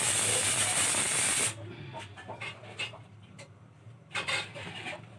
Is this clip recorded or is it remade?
remade